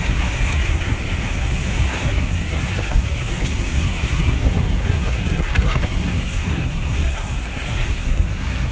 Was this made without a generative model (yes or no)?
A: no